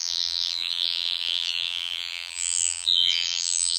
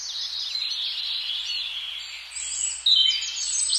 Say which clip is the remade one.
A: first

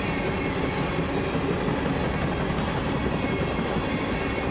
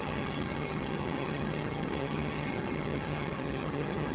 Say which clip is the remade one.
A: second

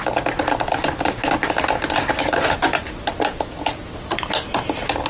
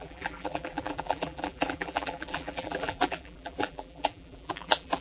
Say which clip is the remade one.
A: second